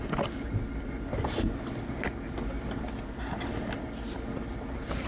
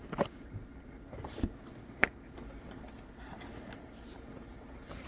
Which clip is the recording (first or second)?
first